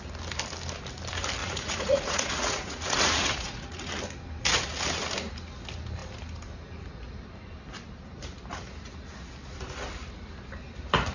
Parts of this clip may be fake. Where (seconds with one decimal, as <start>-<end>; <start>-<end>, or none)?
1.4-3.9